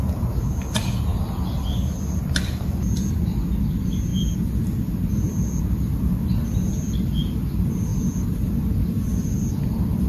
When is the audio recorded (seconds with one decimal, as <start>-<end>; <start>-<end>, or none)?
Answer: 0.0-10.1